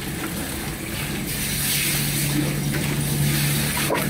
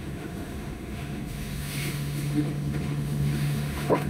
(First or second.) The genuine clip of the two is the first